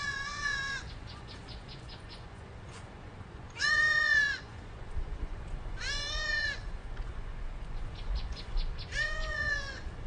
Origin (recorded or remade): remade